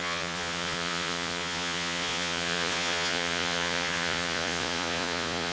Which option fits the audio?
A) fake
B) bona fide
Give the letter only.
A